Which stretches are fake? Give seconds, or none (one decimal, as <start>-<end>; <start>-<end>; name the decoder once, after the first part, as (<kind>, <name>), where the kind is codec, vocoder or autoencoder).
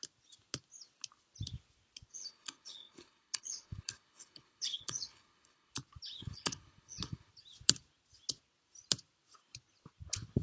2.1-5.7 (codec, HILCodec); 6.2-7.3